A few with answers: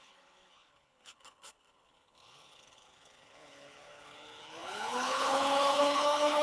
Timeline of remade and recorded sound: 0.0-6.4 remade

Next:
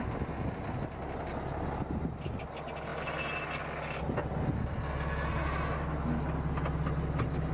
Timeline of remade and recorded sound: 0.0-7.5 recorded

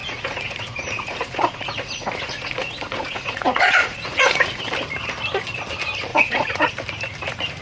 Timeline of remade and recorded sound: 0.0-4.6 remade; 4.6-6.1 recorded; 6.1-6.7 remade; 6.7-7.6 recorded

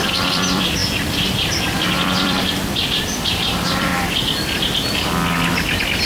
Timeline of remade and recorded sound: 0.0-3.9 remade; 3.9-6.1 recorded